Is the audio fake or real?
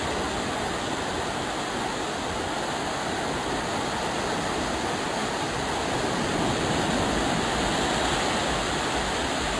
real